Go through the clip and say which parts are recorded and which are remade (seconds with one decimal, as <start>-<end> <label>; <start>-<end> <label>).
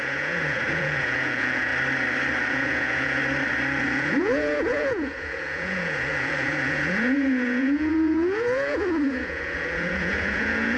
0.0-1.7 remade; 1.7-2.5 recorded; 2.5-3.2 remade; 3.2-3.8 recorded; 3.8-10.8 remade